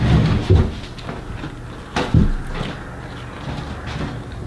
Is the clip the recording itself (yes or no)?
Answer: yes